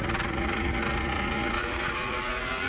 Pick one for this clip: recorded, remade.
remade